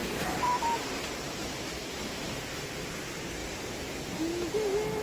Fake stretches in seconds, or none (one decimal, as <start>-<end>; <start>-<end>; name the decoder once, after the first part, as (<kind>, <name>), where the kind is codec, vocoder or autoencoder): 0.0-2.9 (vocoder, BigVGAN v2)